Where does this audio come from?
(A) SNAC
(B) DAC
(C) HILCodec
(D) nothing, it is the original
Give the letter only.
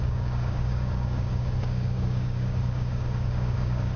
B